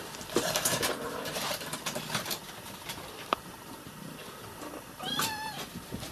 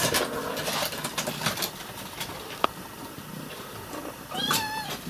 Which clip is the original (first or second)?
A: second